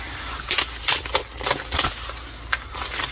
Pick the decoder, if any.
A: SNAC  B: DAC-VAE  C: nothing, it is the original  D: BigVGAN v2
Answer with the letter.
D